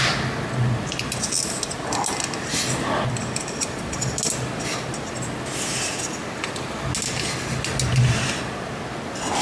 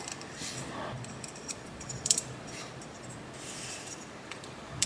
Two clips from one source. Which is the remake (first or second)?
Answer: second